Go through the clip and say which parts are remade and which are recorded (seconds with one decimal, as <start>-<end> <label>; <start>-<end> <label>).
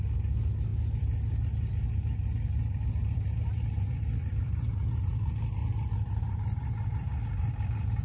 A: 0.0-3.0 recorded; 3.0-5.1 remade; 5.1-5.6 recorded; 5.6-7.2 remade; 7.2-8.0 recorded